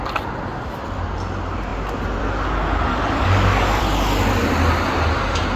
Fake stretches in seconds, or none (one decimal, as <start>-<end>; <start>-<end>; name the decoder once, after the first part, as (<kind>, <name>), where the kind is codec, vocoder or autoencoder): 2.9-3.8 (codec, DAC)